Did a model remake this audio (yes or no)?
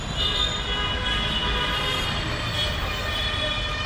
no